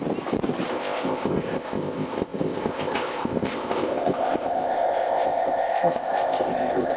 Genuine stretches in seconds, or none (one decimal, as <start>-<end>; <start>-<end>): 0.0-0.7